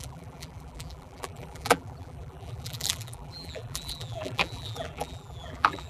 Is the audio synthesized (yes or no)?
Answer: yes